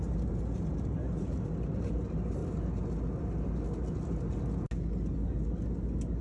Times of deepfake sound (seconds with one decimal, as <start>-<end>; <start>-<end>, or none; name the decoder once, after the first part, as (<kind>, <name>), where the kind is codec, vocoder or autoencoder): 0.0-2.4 (vocoder, BigVGAN v2)